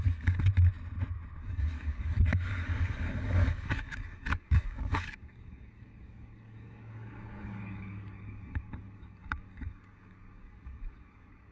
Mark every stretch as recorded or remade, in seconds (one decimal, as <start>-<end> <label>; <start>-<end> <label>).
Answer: 0.0-0.5 remade; 0.5-1.4 recorded; 1.4-11.5 remade